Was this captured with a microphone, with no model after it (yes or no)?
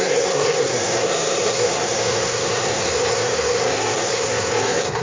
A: no